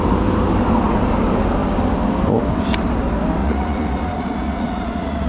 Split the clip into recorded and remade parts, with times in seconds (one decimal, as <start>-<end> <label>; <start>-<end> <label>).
0.0-3.4 recorded; 3.4-5.3 remade